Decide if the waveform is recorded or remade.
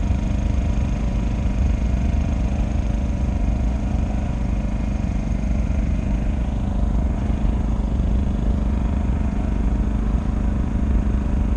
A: remade